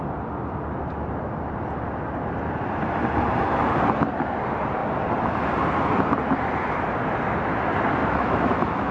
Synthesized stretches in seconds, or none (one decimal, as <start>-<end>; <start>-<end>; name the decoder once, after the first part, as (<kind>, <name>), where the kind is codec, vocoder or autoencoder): 8.0-8.9 (autoencoder, DAC-VAE)